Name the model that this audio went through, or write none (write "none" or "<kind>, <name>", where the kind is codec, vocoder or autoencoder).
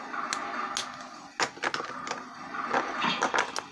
none